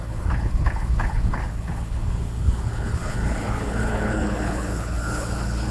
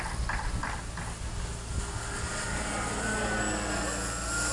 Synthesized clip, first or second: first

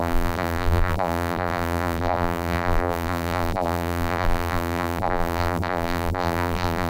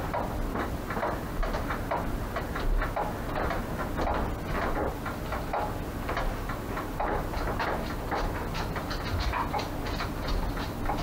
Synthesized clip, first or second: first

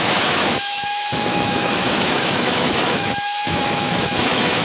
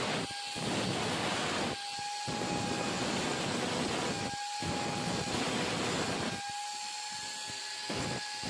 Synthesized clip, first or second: first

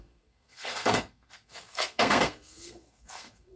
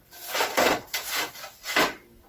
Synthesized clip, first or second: first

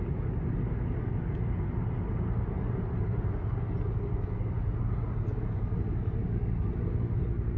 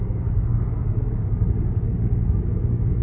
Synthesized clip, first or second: second